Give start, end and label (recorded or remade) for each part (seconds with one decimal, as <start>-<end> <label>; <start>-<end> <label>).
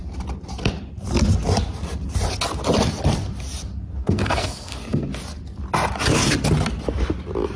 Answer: 0.0-4.0 recorded; 4.0-5.1 remade; 5.1-7.6 recorded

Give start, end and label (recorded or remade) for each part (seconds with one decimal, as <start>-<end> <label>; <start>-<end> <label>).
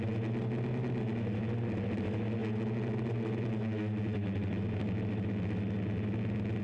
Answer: 0.0-6.6 recorded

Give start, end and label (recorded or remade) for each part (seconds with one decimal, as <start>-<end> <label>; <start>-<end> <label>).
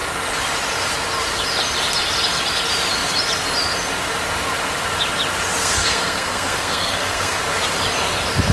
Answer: 0.0-5.6 recorded; 5.6-7.4 remade; 7.4-8.5 recorded